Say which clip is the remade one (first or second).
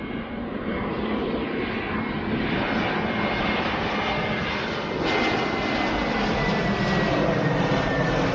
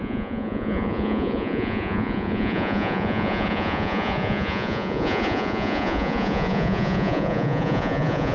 second